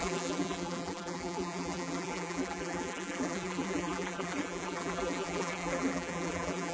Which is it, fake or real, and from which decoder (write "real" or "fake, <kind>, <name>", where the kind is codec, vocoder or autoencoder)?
fake, vocoder, BigVGAN v2